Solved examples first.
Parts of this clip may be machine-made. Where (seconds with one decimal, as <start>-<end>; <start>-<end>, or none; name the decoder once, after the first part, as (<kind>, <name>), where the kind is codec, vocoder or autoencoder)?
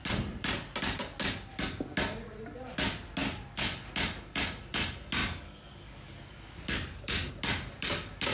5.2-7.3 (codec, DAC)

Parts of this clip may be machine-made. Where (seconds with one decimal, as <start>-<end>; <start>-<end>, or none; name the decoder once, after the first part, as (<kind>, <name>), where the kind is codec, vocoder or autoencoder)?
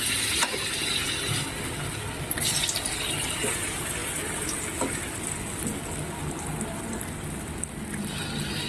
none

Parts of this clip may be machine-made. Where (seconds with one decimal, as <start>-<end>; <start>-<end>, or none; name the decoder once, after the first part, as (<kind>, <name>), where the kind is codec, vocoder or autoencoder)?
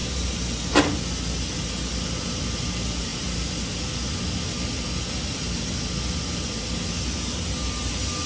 none